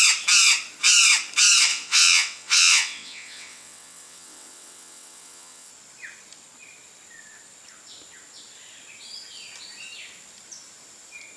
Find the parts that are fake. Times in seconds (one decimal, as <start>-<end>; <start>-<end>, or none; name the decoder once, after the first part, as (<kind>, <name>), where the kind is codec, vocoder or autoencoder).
1.7-5.7 (vocoder, WaveNeXt)